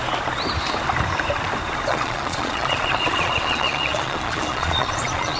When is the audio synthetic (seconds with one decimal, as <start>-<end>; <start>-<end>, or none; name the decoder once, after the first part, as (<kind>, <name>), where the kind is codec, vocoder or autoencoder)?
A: 1.9-5.4 (vocoder, Vocos)